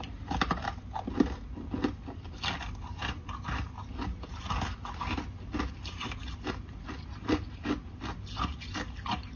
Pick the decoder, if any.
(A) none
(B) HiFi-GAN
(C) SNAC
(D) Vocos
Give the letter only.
A